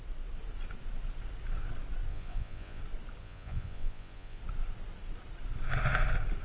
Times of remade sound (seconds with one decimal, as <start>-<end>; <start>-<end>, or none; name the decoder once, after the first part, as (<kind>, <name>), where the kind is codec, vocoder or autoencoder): 2.1-2.8 (vocoder, Vocos); 3.2-4.4

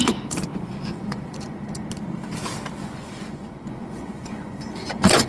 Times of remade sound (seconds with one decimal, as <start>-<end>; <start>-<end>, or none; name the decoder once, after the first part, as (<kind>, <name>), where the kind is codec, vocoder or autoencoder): 0.5-1.9 (vocoder, Vocos); 2.8-5.3

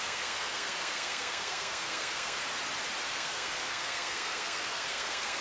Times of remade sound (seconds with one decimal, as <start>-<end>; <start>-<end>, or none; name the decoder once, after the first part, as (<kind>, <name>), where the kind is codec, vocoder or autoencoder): 0.0-2.4 (codec, SNAC); 3.1-5.4

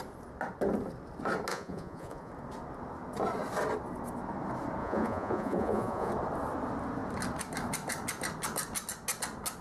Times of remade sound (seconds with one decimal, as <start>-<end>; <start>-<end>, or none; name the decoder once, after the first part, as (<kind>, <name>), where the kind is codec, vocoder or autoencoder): 1.5-2.3 (vocoder, Vocos); 4.8-6.1

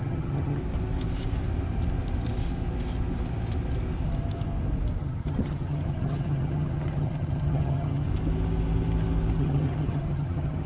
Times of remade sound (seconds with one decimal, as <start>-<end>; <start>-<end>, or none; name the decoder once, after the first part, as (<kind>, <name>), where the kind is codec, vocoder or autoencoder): 0.0-0.6 (vocoder, HiFi-GAN); 5.0-8.1; 9.4-10.7

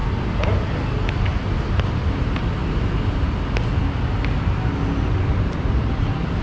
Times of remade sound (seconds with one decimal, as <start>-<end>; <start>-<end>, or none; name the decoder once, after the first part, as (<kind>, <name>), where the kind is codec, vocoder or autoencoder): none